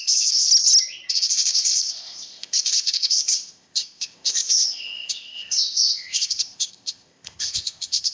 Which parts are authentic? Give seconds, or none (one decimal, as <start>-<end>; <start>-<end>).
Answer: 0.5-1.1